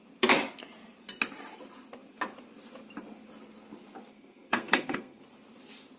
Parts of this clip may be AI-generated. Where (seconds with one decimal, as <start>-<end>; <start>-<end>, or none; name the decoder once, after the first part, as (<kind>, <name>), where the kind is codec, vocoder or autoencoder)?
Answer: 4.1-5.2 (codec, SNAC)